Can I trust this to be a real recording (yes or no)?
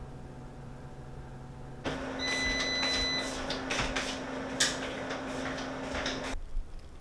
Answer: yes